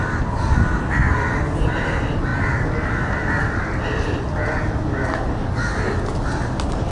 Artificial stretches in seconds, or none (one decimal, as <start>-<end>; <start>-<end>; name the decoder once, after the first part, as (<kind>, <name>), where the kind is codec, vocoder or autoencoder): none